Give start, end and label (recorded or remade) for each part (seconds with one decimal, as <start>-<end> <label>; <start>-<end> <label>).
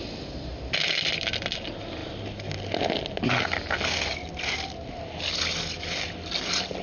0.0-6.8 recorded